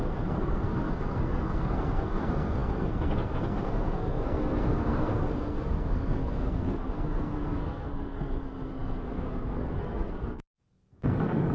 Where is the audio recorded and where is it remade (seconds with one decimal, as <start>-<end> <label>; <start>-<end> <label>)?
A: 0.0-11.5 remade